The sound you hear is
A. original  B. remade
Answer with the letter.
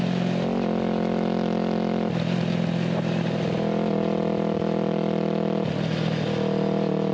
A